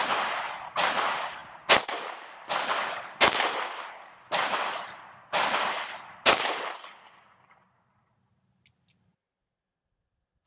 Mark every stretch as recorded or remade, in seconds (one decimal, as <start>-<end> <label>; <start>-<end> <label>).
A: 0.0-10.5 recorded